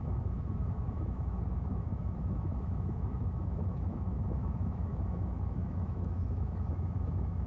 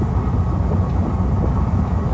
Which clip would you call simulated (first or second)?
first